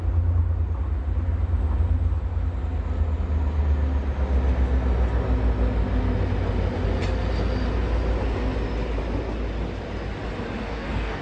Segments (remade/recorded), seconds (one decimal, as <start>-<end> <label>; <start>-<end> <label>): 0.0-10.6 recorded; 10.6-11.2 remade